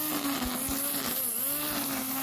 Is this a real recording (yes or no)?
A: yes